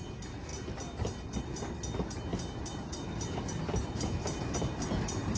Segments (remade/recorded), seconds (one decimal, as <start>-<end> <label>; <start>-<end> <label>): 0.0-5.4 recorded